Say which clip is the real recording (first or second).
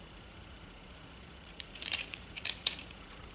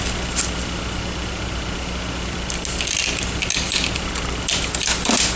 second